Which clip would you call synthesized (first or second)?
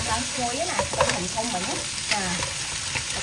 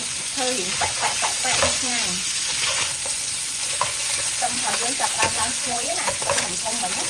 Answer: second